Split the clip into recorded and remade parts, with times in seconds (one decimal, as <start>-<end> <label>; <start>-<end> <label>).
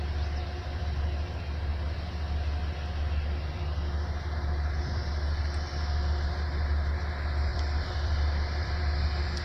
0.0-7.5 recorded; 7.5-8.8 remade; 8.8-9.4 recorded